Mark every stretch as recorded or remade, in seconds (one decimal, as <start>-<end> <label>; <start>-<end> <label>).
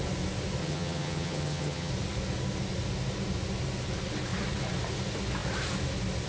0.0-0.6 recorded; 0.6-1.9 remade; 1.9-6.3 recorded